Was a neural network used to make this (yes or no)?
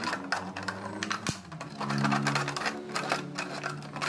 no